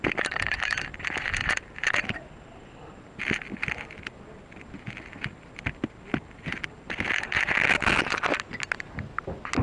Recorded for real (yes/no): yes